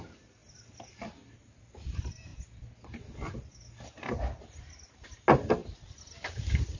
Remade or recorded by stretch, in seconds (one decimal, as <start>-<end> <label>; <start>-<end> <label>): 0.0-6.8 recorded